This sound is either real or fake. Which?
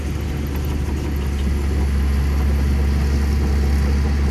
real